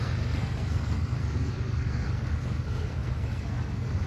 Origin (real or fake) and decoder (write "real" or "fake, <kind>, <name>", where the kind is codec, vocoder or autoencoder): fake, codec, SNAC